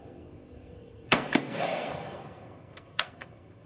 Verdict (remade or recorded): remade